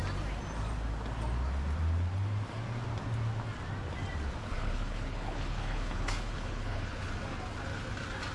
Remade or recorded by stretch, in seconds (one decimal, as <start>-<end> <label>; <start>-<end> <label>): 0.0-4.4 recorded; 4.4-7.1 remade; 7.1-8.3 recorded